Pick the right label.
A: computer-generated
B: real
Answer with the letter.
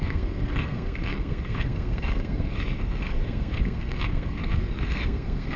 A